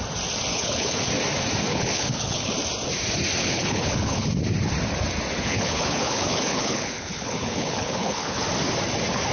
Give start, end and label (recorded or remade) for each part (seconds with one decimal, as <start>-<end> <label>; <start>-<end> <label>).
0.0-0.5 recorded; 0.5-1.1 remade; 1.1-1.7 recorded; 1.7-2.5 remade; 2.5-3.4 recorded; 3.4-4.3 remade; 4.3-5.4 recorded; 5.4-8.4 remade; 8.4-9.3 recorded